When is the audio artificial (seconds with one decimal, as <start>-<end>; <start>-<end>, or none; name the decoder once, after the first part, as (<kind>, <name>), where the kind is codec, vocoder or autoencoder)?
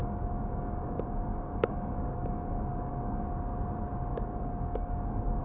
0.0-3.2 (codec, DAC); 4.1-5.4